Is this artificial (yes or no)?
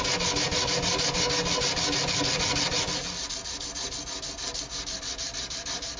no